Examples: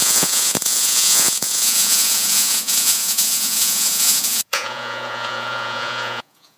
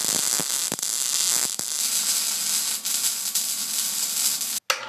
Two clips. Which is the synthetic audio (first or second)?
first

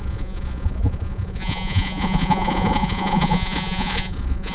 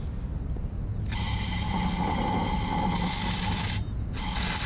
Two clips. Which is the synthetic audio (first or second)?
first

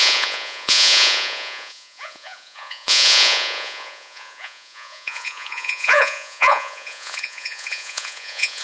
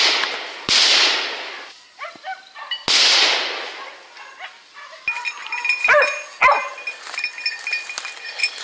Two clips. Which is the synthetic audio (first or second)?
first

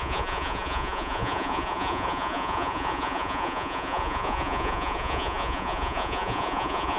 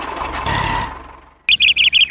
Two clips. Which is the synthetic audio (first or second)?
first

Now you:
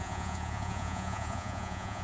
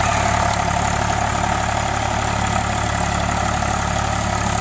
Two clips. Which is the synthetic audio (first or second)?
first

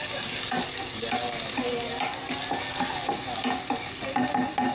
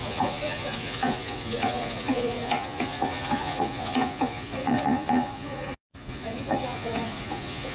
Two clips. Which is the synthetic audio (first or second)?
second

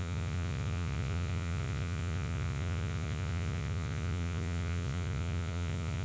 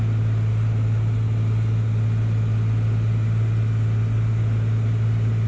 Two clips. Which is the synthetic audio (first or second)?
first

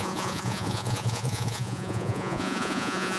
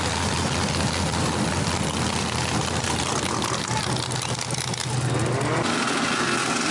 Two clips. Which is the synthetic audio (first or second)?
first